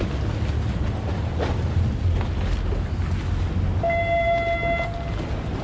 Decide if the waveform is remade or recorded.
recorded